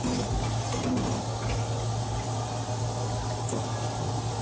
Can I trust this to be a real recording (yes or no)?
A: yes